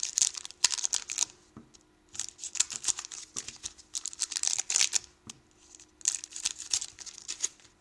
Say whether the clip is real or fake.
real